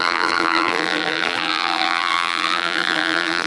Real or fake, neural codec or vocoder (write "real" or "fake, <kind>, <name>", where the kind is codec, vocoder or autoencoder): fake, vocoder, BigVGAN v2